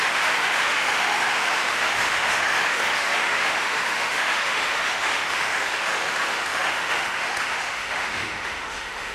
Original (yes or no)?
no